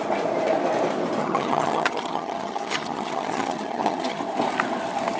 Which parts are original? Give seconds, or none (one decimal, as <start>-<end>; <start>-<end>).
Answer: 0.0-1.2; 4.2-5.2